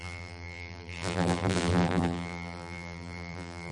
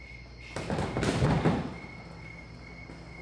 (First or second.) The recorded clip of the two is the second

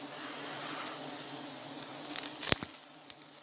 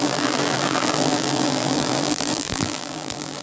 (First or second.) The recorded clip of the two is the first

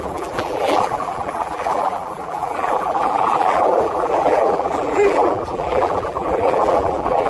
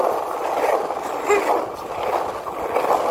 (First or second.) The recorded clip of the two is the second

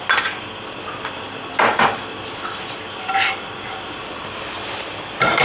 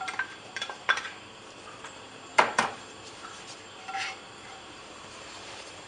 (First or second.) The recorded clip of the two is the first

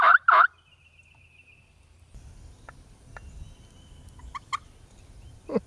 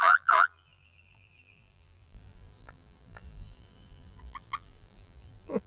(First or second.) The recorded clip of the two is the first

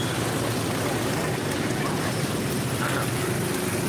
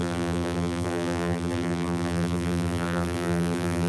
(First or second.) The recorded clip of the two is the first